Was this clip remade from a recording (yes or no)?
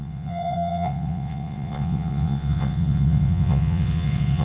yes